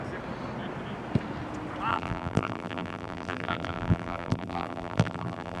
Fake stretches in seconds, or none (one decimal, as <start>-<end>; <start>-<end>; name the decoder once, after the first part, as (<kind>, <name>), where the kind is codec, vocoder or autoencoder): 1.9-5.6 (vocoder, BigVGAN v2)

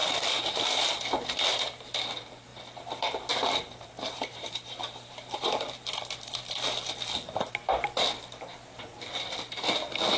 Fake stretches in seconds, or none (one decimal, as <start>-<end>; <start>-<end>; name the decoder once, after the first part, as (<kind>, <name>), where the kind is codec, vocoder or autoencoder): 0.0-0.6 (vocoder, BigVGAN v2); 2.5-6.0

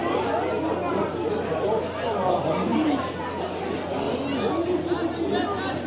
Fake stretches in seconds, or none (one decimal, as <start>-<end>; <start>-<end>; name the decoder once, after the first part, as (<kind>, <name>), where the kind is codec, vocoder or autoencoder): 2.7-3.4 (vocoder, BigVGAN v2)

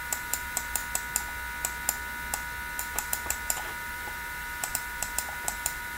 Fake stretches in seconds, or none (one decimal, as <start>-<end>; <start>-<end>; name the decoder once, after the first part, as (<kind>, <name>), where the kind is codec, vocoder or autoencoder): 0.0-0.8 (vocoder, BigVGAN v2); 2.8-6.0

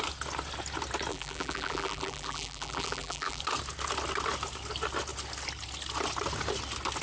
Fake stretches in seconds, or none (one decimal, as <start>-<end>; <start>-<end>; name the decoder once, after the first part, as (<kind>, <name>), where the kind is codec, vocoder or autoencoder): 1.1-3.4 (vocoder, BigVGAN v2)

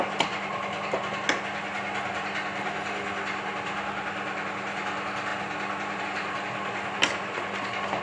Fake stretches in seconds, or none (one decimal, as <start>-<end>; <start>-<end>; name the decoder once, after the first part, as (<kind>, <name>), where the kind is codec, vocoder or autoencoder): none

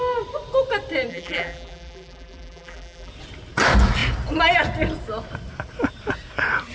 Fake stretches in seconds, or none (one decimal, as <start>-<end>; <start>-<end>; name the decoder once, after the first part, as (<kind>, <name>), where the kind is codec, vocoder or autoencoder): 1.1-3.1 (vocoder, BigVGAN v2)

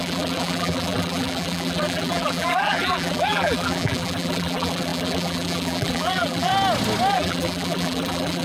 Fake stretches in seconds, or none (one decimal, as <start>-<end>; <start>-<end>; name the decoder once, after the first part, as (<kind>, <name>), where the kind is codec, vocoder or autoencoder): 0.0-6.5 (vocoder, BigVGAN v2); 7.1-8.4